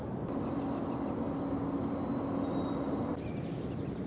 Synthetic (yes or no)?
no